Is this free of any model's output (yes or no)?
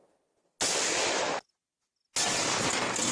yes